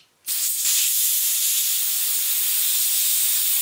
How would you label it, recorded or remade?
recorded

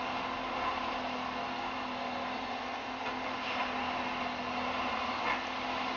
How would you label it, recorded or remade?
recorded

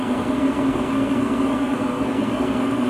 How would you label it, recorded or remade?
remade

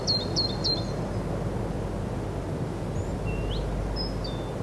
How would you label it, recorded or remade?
recorded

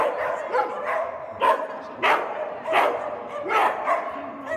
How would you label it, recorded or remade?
recorded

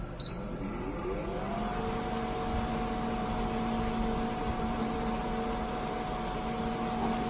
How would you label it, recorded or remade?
recorded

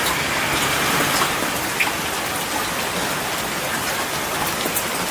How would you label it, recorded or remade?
recorded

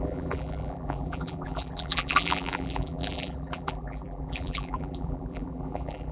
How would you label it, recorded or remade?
remade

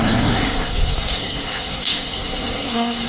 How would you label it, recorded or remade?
remade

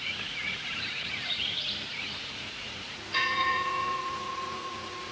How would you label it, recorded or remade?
remade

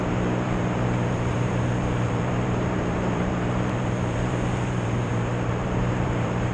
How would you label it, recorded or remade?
remade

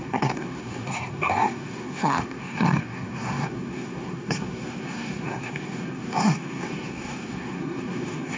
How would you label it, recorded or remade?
remade